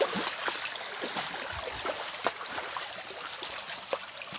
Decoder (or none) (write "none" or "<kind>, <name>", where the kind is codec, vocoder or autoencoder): none